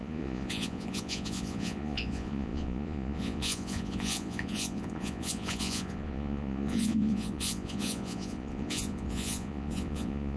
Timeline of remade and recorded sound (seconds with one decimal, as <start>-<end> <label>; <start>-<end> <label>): 0.0-10.4 remade